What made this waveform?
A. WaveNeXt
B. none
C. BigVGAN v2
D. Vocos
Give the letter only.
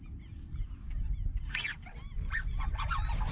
B